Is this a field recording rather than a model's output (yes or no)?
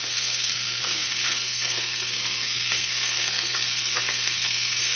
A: no